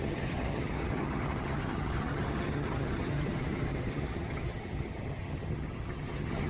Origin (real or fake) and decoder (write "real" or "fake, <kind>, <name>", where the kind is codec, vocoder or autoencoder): fake, vocoder, HiFi-GAN